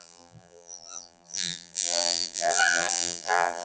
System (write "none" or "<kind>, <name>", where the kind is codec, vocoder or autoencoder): vocoder, BigVGAN v2